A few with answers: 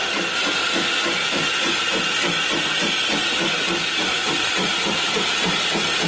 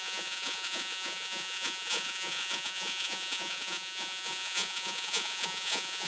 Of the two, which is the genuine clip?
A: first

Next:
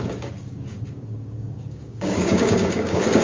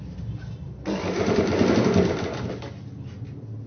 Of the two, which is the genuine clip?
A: second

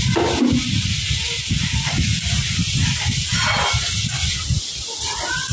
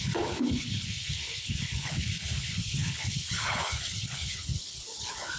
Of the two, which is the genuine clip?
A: first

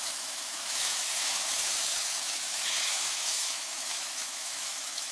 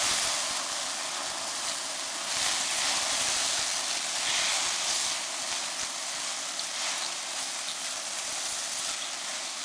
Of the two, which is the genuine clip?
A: second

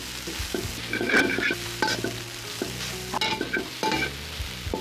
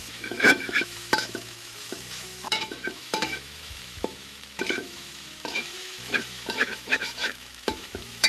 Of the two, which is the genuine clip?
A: first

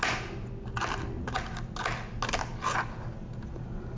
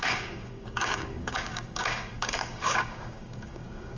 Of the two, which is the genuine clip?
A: first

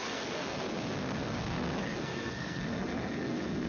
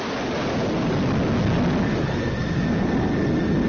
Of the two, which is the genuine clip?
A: second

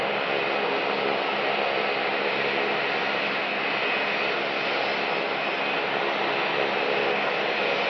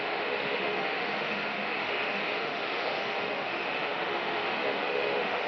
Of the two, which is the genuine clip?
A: first